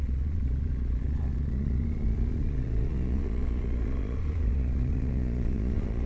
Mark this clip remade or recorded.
remade